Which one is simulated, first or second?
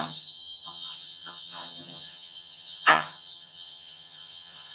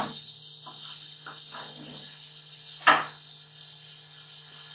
first